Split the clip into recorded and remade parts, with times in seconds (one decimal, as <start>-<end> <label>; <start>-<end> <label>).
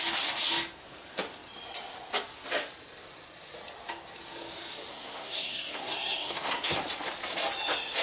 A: 0.0-4.9 recorded; 4.9-6.8 remade; 6.8-8.0 recorded